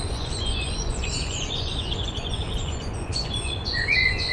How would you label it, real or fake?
fake